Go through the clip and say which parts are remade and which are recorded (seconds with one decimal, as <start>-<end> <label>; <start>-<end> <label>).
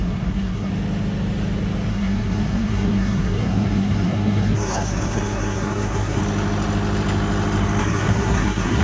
0.0-0.7 remade; 0.7-1.9 recorded; 1.9-6.2 remade; 6.2-7.8 recorded; 7.8-8.8 remade